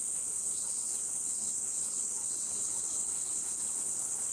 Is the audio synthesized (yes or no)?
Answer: yes